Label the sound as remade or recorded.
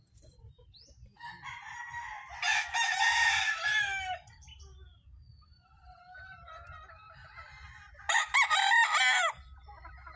recorded